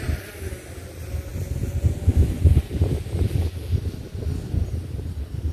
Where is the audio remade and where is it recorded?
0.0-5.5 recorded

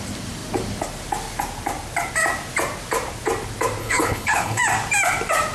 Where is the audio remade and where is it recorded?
0.0-3.8 recorded; 3.8-4.6 remade; 4.6-5.5 recorded

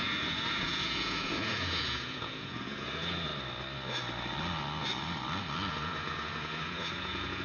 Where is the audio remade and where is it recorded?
0.0-3.3 remade; 3.3-5.7 recorded; 5.7-7.4 remade

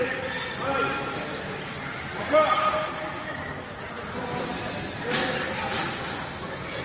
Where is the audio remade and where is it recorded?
0.0-6.8 recorded

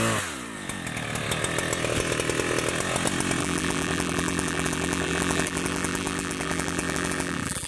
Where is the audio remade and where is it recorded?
0.0-3.4 recorded; 3.4-7.7 remade

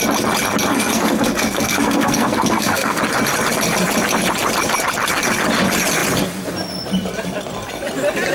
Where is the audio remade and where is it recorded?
0.0-0.7 recorded; 0.7-3.0 remade; 3.0-8.3 recorded

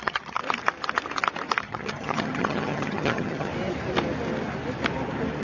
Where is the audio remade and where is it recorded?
0.0-0.4 remade; 0.4-1.6 recorded; 1.6-3.5 remade; 3.5-5.4 recorded

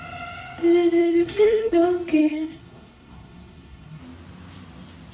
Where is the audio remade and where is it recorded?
0.0-1.0 recorded; 1.0-1.8 remade; 1.8-2.2 recorded; 2.2-4.0 remade; 4.0-5.1 recorded